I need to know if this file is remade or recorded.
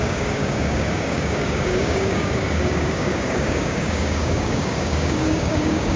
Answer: remade